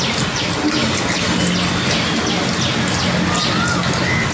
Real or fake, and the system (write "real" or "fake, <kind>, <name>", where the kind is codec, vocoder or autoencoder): real